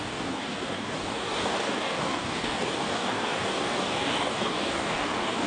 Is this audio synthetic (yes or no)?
yes